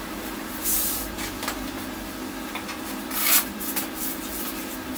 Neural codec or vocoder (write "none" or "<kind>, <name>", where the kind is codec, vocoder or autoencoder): vocoder, BigVGAN v2